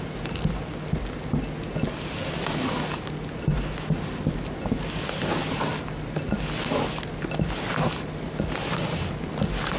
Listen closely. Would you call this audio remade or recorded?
recorded